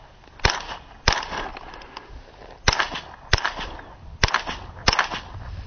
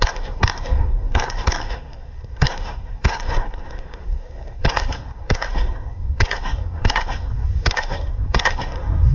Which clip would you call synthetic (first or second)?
second